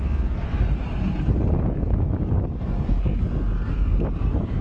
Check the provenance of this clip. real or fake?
real